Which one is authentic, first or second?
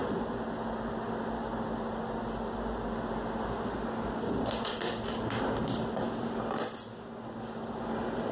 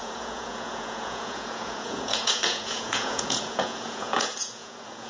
first